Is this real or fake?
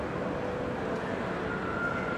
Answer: real